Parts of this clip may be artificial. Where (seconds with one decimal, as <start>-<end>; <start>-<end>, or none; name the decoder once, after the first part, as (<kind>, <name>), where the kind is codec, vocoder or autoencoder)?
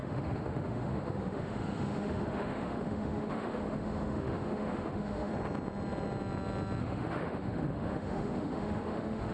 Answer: 0.0-5.3 (autoencoder, DAC-VAE); 6.8-9.3